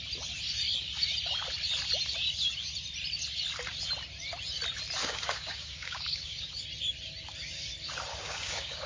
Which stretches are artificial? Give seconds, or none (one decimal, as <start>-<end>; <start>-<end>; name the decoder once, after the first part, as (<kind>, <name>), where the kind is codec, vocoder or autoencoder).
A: 5.0-6.5 (codec, DAC); 8.1-8.9